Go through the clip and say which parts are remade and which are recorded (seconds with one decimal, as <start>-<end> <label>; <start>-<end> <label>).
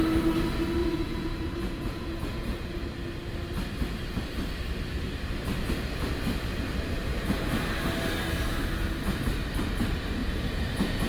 0.0-0.8 recorded; 0.8-2.8 remade; 2.8-10.2 recorded; 10.2-11.1 remade